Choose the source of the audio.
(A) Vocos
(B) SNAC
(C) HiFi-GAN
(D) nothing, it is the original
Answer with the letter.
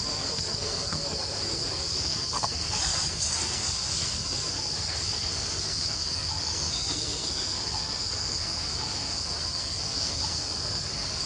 B